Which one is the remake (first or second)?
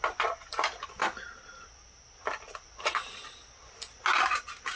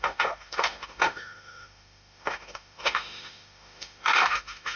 second